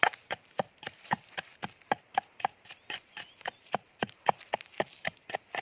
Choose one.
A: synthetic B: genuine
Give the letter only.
A